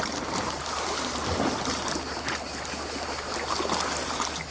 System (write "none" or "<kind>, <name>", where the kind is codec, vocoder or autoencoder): none